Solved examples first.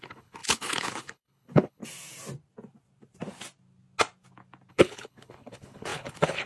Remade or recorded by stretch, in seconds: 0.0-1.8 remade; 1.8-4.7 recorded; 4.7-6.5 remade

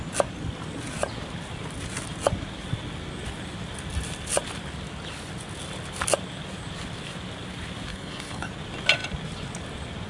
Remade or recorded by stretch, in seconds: 0.0-7.9 recorded; 7.9-8.5 remade; 8.5-10.1 recorded

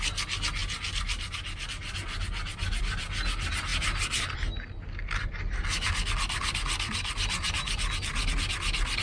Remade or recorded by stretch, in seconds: 0.0-9.0 recorded

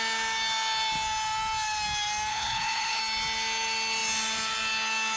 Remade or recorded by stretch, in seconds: 0.0-2.3 recorded; 2.3-3.0 remade; 3.0-5.2 recorded

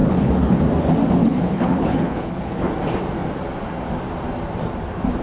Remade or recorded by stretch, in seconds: 0.0-0.6 remade; 0.6-1.2 recorded; 1.2-2.7 remade; 2.7-5.2 recorded

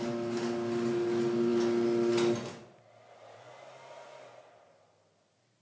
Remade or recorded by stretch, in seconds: 0.0-5.6 recorded

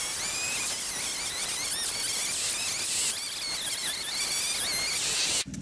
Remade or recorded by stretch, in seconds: 0.0-5.6 recorded

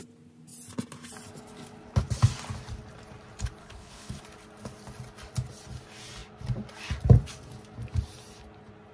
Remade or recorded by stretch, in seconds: 0.0-3.6 recorded; 3.6-4.2 remade; 4.2-8.9 recorded